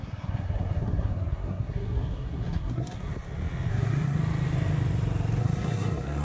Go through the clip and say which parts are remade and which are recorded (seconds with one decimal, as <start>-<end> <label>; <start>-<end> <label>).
0.0-3.1 remade; 3.1-3.7 recorded; 3.7-4.2 remade; 4.2-5.4 recorded; 5.4-6.2 remade